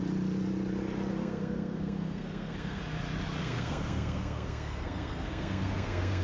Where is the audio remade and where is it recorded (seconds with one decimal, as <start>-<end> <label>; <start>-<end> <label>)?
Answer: 0.0-1.2 recorded; 1.2-2.8 remade; 2.8-3.4 recorded; 3.4-6.2 remade